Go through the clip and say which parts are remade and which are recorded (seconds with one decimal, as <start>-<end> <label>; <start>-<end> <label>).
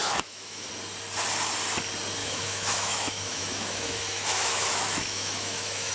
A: 0.0-0.7 remade; 0.7-2.2 recorded; 2.2-5.9 remade